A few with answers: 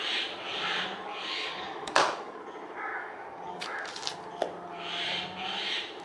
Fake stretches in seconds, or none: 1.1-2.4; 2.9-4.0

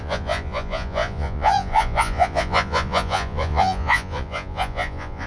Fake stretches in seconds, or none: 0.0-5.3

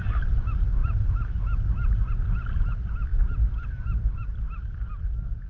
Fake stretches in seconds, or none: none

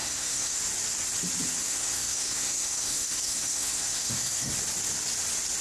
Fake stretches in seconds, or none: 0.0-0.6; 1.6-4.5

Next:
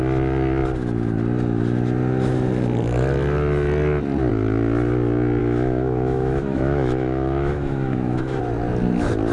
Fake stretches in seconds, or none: 5.4-8.4